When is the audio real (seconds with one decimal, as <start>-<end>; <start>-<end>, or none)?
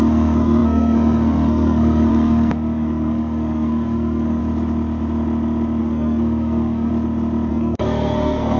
4.4-5.8; 6.9-7.5